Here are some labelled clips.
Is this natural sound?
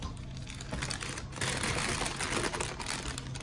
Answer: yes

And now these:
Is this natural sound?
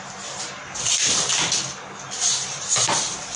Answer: yes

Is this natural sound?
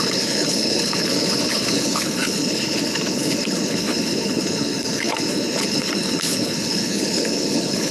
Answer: no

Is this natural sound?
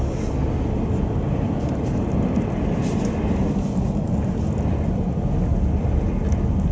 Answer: yes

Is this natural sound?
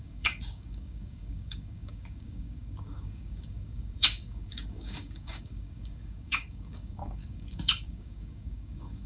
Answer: no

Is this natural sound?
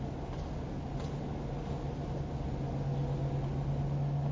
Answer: yes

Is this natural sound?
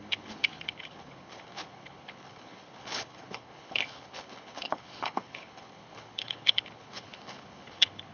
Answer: no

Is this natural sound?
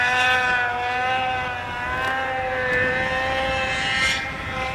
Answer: no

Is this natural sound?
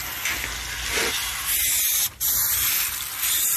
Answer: yes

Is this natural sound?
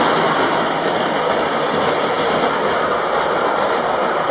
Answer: yes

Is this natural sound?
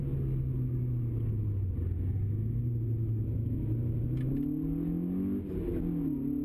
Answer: yes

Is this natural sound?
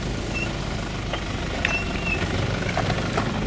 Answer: yes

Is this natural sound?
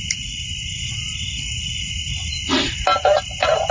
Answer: yes